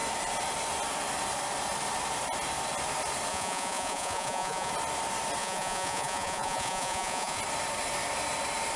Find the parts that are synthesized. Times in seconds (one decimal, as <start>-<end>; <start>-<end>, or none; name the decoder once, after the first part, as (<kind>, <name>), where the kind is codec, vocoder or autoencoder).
3.3-4.7 (vocoder, Vocos); 5.4-7.4